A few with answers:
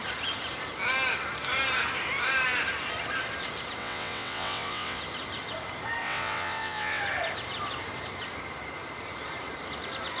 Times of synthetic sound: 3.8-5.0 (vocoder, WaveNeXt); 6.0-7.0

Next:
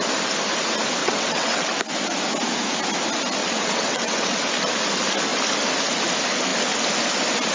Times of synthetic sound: 1.0-1.8 (vocoder, WaveNeXt); 3.4-4.4

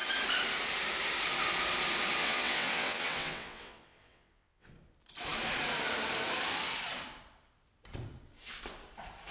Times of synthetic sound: 2.2-4.7 (vocoder, WaveNeXt)